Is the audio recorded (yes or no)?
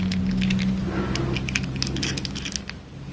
yes